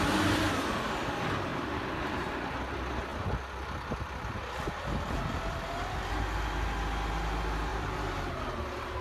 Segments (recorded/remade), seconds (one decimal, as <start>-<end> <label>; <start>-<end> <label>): 0.0-1.5 recorded; 1.5-2.6 remade; 2.6-7.7 recorded; 7.7-8.4 remade; 8.4-9.0 recorded